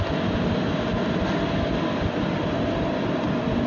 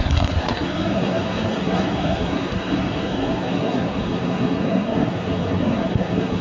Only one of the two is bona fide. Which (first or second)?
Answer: first